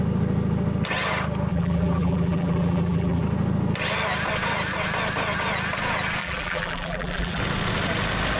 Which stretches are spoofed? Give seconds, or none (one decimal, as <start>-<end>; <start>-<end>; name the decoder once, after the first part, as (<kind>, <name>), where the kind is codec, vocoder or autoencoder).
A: 1.5-3.2 (vocoder, BigVGAN v2); 6.2-7.4